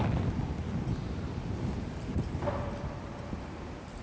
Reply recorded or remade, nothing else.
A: recorded